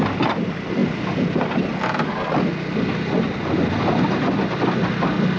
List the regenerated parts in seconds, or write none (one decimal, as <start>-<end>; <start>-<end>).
none